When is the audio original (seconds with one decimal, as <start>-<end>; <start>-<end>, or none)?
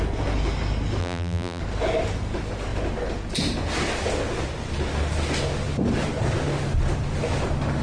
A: 0.0-1.0; 1.6-7.8